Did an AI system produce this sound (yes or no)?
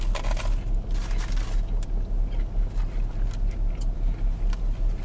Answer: no